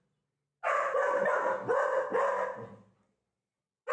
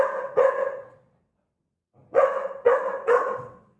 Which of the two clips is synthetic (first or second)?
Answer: second